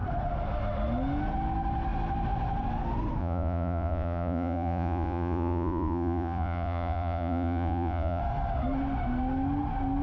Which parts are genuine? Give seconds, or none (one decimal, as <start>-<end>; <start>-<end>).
0.0-3.2; 8.2-10.0

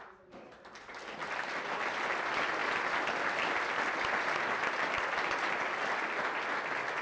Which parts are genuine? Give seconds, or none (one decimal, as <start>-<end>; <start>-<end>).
0.0-7.0

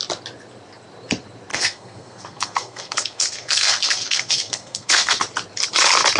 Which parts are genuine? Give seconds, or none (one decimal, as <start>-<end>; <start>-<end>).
0.0-1.5; 5.2-6.2